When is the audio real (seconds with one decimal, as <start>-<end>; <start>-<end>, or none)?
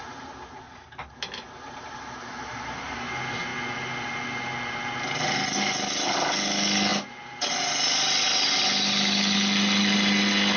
0.0-10.6